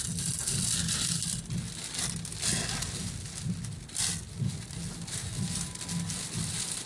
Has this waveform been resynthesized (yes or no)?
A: no